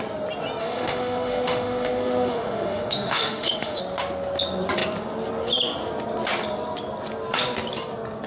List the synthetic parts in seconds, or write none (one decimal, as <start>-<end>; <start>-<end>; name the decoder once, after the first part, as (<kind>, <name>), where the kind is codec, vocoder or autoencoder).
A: 0.6-3.8 (autoencoder, DAC-VAE)